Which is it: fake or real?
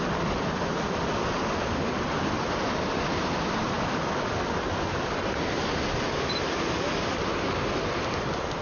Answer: real